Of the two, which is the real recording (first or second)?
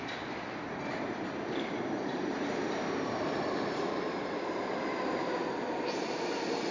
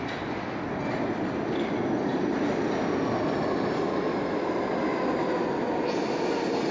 second